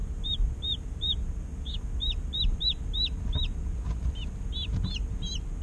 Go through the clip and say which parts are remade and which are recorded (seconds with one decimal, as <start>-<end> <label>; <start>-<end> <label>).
0.0-2.6 remade; 2.6-5.6 recorded